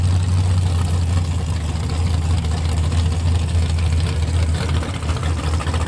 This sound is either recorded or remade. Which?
recorded